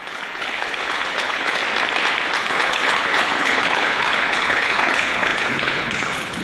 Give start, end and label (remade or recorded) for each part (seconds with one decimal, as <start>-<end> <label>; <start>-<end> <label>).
0.0-1.6 remade; 1.6-2.4 recorded; 2.4-6.4 remade